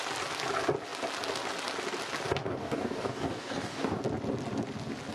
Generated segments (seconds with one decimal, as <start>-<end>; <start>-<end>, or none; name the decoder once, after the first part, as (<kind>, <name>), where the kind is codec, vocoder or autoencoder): 2.4-4.0 (codec, DAC)